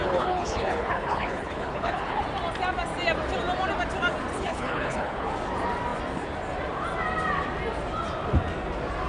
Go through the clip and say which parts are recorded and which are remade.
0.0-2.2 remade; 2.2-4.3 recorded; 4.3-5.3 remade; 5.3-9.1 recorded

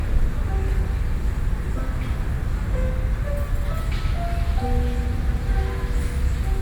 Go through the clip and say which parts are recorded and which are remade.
0.0-6.6 recorded

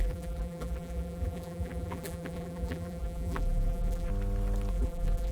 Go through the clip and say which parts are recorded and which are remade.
0.0-4.1 remade; 4.1-4.7 recorded; 4.7-5.3 remade